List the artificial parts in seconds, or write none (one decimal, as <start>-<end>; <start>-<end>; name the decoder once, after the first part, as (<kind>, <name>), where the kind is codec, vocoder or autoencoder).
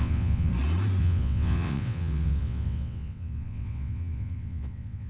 0.0-0.5 (vocoder, WaveNeXt); 1.0-5.1